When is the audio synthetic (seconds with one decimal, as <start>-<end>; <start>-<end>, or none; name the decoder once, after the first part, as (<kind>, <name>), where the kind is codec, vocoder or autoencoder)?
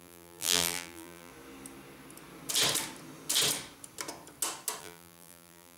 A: 0.0-1.3 (vocoder, BigVGAN v2); 4.8-5.8